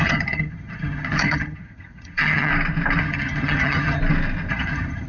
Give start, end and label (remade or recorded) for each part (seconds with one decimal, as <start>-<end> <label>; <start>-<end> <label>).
0.0-2.5 remade; 2.5-3.0 recorded; 3.0-4.0 remade; 4.0-4.5 recorded; 4.5-5.1 remade